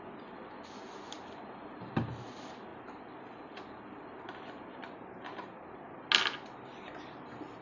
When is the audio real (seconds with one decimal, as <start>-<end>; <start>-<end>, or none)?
0.0-7.6